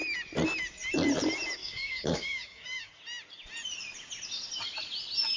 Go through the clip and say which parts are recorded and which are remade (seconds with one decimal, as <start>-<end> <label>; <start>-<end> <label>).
0.0-1.6 recorded; 1.6-2.9 remade; 2.9-5.4 recorded